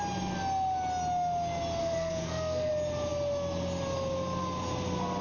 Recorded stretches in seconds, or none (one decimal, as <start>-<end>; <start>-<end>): 0.0-1.8; 2.7-5.2